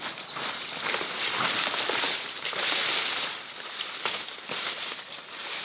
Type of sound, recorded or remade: recorded